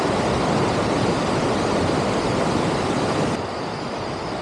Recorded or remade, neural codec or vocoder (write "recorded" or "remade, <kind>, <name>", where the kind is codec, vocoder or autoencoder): recorded